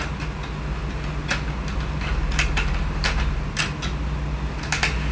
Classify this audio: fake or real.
real